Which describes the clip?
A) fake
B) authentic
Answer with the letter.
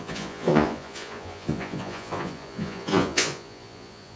A